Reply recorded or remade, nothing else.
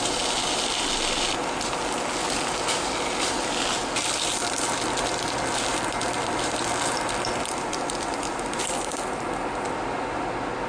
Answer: recorded